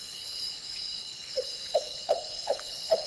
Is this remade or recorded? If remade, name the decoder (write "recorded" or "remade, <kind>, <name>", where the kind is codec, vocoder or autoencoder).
remade, codec, HILCodec